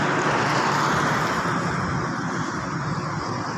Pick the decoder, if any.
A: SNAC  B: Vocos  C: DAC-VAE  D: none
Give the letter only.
D